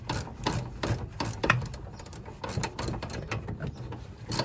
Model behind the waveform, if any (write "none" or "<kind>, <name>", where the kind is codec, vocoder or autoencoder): vocoder, BigVGAN v2